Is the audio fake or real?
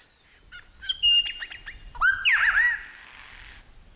real